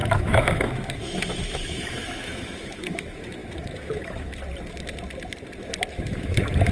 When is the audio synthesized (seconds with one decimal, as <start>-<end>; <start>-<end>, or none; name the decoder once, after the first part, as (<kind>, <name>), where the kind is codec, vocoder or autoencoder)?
0.0-4.4 (autoencoder, DAC-VAE); 5.9-6.7